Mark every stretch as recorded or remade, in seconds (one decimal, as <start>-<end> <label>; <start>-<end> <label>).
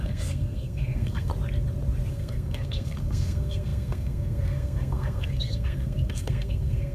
0.0-1.3 remade; 1.3-2.1 recorded; 2.1-6.9 remade